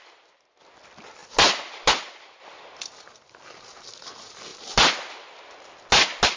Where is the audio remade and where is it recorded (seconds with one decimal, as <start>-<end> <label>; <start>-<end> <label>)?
0.0-6.4 recorded